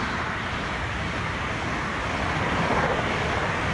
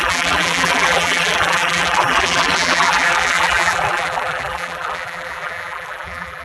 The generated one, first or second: second